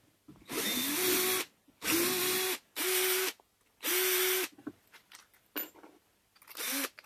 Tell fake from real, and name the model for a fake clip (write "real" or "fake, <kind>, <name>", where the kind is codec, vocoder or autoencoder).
real